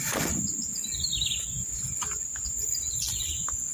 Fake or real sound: real